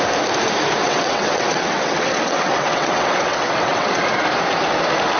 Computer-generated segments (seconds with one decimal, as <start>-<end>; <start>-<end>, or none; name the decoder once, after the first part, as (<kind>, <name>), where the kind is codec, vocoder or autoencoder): 0.8-3.9 (vocoder, WaveNeXt)